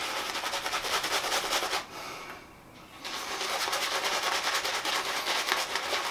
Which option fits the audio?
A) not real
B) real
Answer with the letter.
B